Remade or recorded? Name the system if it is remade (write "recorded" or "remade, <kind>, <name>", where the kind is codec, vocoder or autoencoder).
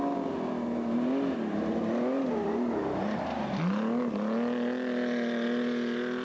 recorded